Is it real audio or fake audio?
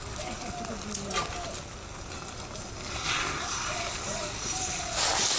real